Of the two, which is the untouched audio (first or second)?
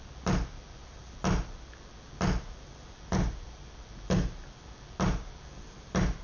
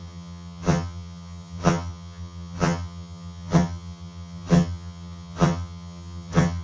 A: first